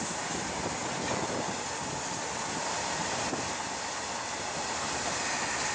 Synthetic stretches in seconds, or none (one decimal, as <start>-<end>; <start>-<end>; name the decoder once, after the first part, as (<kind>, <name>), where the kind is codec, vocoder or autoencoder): none